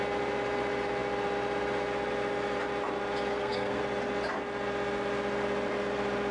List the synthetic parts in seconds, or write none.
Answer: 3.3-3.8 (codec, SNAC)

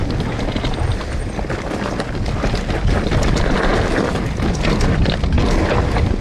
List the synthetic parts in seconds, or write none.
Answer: none

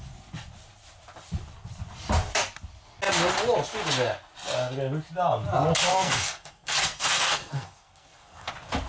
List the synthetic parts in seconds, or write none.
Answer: 5.9-8.5 (codec, SNAC)